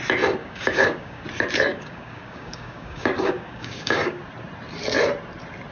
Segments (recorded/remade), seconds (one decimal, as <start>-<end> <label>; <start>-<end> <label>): 0.0-0.4 recorded; 0.4-1.2 remade; 1.2-1.7 recorded; 1.7-4.2 remade; 4.2-5.7 recorded